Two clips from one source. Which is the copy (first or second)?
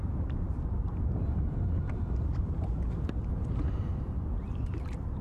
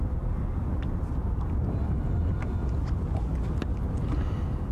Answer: first